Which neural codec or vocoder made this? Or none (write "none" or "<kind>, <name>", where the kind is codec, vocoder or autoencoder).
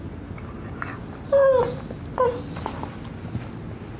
none